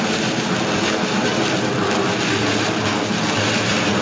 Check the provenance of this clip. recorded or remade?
recorded